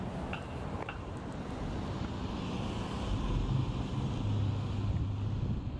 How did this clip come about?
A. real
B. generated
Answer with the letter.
A